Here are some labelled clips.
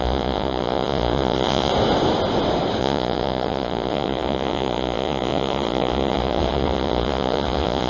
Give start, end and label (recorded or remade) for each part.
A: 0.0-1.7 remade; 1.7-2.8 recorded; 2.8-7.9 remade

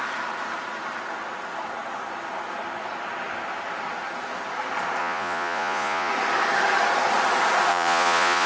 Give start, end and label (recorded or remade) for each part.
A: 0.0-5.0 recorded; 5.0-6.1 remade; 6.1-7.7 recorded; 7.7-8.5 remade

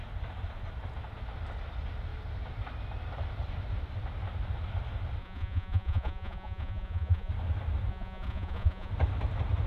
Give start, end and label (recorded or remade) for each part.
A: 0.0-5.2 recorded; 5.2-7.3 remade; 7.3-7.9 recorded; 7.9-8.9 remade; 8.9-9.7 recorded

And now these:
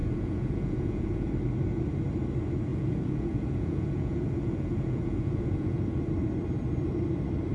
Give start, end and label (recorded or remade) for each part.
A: 0.0-1.3 remade; 1.3-2.7 recorded; 2.7-5.8 remade; 5.8-7.5 recorded

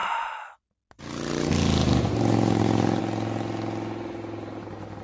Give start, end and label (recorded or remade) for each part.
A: 0.0-5.0 recorded

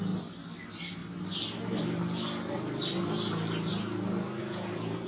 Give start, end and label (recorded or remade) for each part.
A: 0.0-4.4 recorded; 4.4-5.1 remade

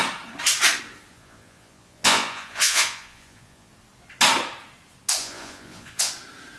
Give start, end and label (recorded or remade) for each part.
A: 0.0-1.1 recorded; 1.1-3.7 remade; 3.7-5.2 recorded; 5.2-6.1 remade; 6.1-6.6 recorded